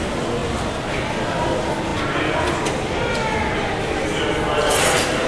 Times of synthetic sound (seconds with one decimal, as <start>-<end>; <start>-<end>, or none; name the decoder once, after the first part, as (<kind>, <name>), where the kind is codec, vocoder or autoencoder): none